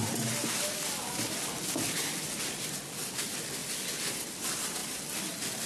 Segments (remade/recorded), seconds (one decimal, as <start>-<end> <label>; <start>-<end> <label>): 0.0-5.7 recorded